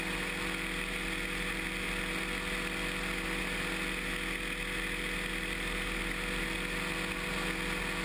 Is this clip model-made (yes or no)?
no